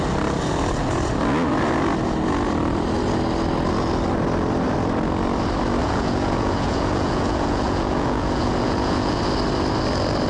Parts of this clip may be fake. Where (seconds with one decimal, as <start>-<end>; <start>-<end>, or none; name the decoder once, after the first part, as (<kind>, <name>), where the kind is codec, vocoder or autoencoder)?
5.8-9.2 (vocoder, Vocos)